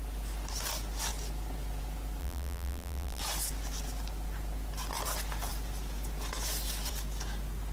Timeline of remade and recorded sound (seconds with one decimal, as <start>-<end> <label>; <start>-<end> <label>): 0.0-2.2 recorded; 2.2-3.2 remade; 3.2-7.7 recorded